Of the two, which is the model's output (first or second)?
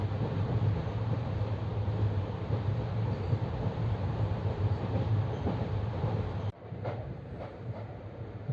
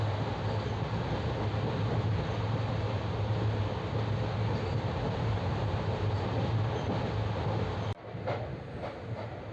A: first